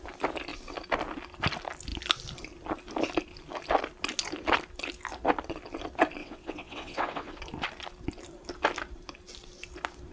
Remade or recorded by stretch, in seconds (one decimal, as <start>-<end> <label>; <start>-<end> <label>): 0.0-6.2 recorded; 6.2-7.4 remade; 7.4-10.1 recorded